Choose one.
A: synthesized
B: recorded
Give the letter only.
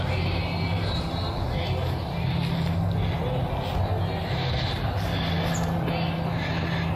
B